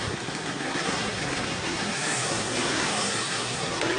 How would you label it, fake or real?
fake